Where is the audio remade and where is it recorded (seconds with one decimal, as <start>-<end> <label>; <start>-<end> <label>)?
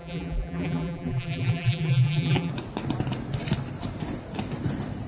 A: 0.0-2.5 remade; 2.5-5.1 recorded